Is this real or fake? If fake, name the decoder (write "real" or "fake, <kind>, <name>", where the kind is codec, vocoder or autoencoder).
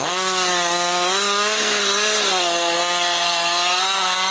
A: fake, codec, SNAC